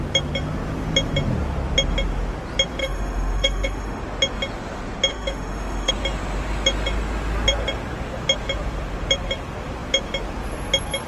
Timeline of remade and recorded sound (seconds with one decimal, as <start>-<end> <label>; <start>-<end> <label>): 0.0-2.8 recorded; 2.8-4.0 remade; 4.0-5.1 recorded; 5.1-5.9 remade; 5.9-11.1 recorded